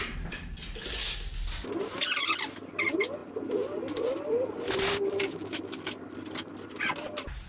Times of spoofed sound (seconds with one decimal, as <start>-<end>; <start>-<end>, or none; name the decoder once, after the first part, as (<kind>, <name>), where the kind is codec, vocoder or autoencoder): none